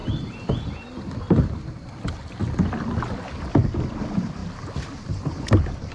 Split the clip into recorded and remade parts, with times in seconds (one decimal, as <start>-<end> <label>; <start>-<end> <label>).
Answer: 0.0-5.9 recorded